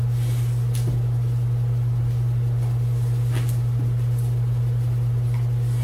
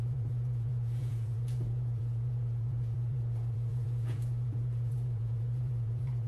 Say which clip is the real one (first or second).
first